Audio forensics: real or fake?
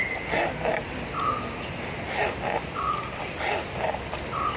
real